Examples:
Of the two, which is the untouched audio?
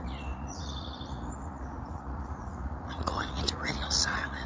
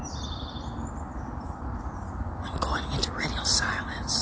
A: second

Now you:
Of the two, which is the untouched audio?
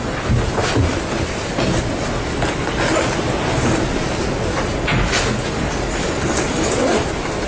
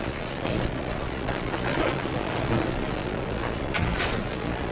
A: first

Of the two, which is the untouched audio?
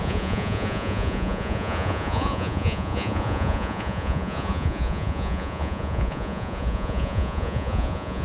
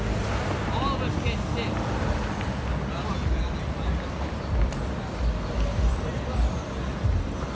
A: second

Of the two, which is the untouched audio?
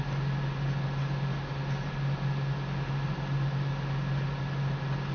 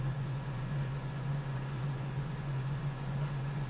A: first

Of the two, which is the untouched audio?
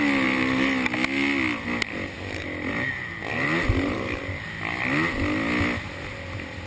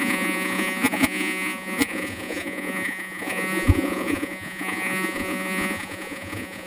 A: first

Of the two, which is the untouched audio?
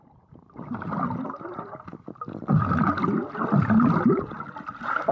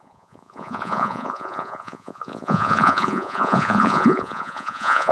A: first